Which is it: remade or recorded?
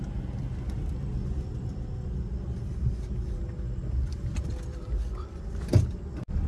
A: recorded